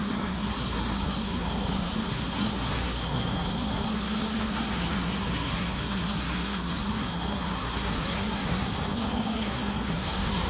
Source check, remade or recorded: remade